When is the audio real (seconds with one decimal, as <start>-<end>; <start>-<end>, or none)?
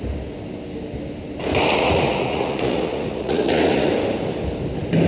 0.0-1.7; 3.9-5.1